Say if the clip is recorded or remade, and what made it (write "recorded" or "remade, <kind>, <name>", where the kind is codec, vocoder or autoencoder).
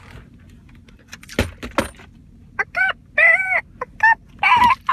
recorded